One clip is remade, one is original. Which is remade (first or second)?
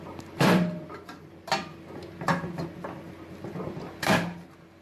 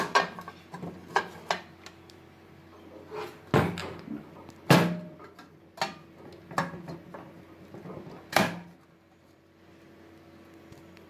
first